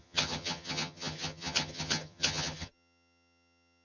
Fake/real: fake